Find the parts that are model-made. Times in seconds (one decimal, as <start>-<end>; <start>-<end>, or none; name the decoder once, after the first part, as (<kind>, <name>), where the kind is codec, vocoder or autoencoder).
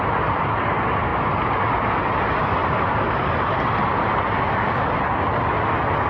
2.6-4.1 (vocoder, BigVGAN v2)